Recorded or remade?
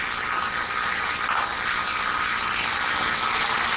recorded